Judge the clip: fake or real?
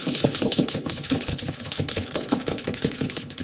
fake